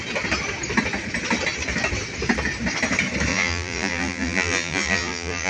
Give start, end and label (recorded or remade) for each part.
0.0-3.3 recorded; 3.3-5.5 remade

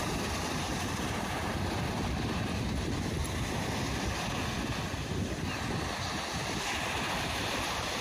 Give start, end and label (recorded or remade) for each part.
0.0-3.2 remade; 3.2-5.7 recorded; 5.7-8.0 remade